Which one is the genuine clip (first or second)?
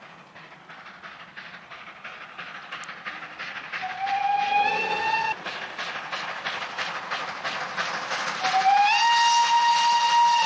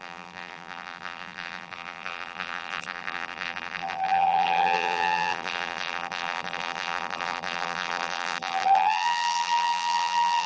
first